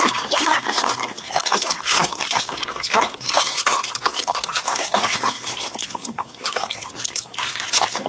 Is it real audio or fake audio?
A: fake